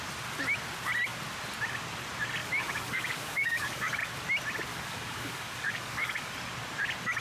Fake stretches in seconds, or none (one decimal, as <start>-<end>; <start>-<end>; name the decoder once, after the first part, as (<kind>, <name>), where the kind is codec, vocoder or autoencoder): 2.4-4.0 (codec, DAC); 4.7-6.3